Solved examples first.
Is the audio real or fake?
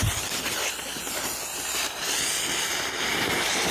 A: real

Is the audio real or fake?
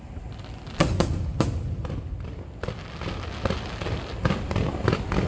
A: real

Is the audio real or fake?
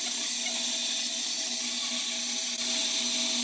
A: real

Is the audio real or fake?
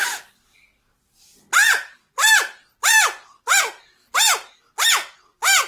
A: real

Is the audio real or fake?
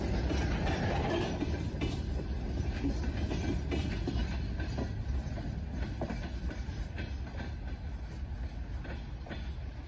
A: real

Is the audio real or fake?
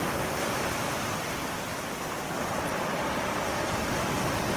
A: real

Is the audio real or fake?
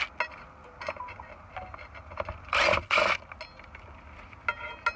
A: real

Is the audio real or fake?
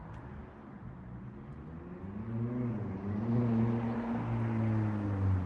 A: real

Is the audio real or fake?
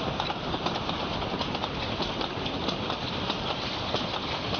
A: real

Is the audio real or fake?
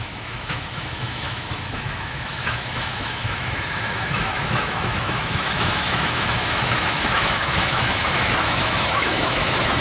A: fake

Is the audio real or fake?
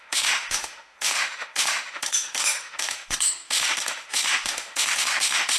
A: fake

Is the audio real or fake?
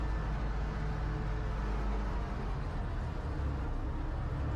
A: real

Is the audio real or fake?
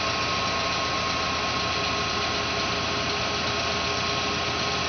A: real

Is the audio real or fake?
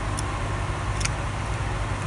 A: real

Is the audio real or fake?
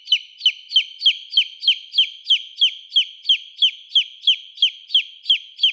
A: real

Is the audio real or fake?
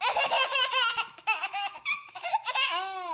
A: fake